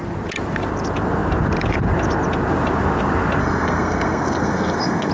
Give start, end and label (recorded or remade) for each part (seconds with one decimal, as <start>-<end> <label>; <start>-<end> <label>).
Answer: 0.0-3.4 recorded; 3.4-5.1 remade